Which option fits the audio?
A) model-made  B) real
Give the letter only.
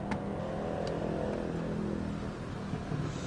B